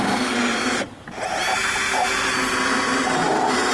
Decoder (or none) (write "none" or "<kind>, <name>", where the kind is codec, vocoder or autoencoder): none